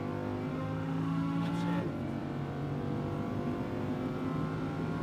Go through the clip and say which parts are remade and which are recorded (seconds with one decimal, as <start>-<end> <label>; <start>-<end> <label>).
0.0-0.5 recorded; 0.5-1.5 remade; 1.5-5.0 recorded